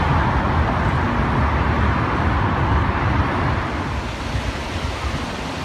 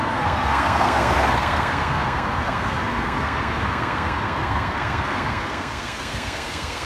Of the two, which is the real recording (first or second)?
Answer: first